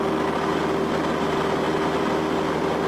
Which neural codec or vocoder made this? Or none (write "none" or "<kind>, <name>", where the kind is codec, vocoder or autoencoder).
none